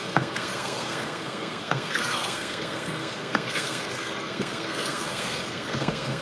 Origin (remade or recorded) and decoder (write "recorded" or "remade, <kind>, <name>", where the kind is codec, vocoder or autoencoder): remade, codec, SNAC